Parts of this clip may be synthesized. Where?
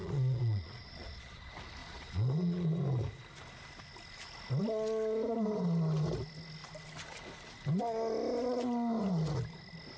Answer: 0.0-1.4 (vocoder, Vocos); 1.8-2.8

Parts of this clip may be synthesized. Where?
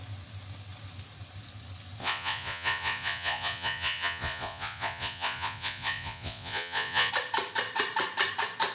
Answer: 2.0-7.1 (vocoder, Vocos)